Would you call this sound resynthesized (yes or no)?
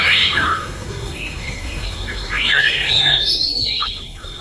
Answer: yes